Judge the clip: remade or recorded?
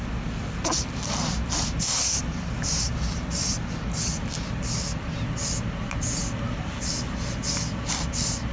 recorded